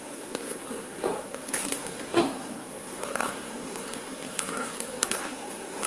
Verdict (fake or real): fake